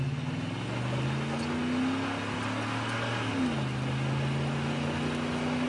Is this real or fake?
real